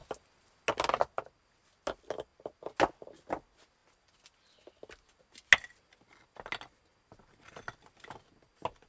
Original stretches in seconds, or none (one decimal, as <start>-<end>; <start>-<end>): 0.0-8.9